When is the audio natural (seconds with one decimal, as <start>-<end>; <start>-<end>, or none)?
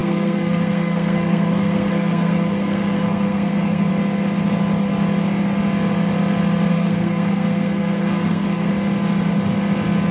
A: 3.9-6.7; 8.7-10.1